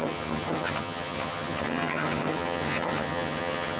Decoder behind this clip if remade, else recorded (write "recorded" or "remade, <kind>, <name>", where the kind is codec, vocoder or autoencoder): remade, vocoder, HiFi-GAN